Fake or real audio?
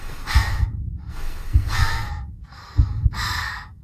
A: fake